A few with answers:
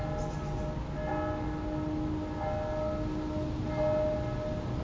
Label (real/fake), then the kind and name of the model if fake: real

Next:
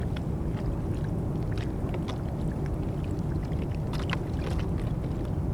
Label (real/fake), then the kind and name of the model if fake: real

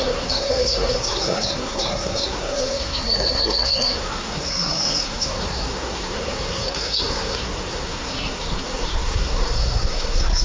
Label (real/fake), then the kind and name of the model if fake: fake, codec, SNAC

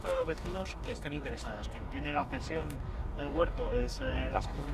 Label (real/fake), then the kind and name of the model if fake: fake, codec, DAC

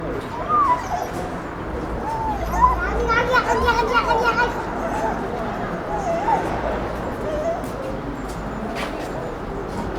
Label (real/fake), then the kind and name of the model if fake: real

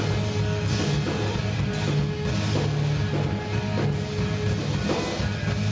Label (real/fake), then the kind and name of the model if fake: real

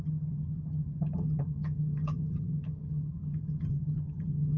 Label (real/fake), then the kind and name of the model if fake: fake, vocoder, HiFi-GAN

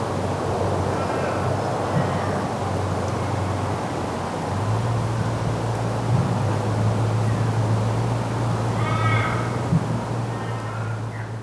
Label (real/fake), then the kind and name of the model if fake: real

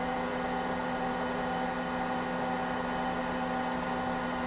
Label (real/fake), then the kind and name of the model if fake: real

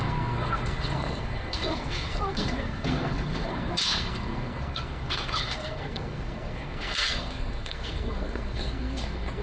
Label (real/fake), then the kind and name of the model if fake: fake, codec, SNAC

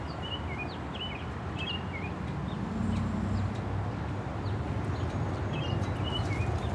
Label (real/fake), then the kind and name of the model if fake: real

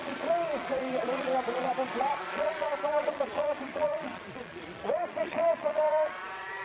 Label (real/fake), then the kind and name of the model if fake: fake, vocoder, Vocos